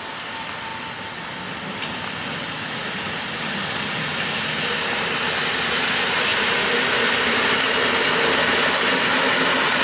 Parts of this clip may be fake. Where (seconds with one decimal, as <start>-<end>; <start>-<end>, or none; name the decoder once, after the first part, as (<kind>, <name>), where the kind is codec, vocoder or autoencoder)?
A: none